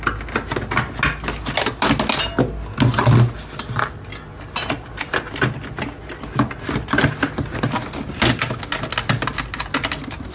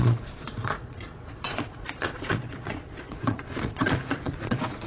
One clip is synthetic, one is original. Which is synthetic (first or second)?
second